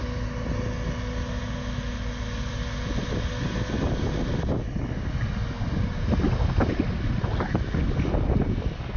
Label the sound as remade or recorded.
recorded